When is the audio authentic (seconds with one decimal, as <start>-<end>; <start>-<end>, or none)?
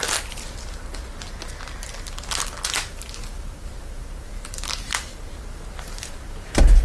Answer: 1.0-3.2